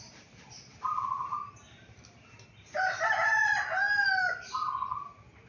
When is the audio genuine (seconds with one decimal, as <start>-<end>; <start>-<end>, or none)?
0.0-5.5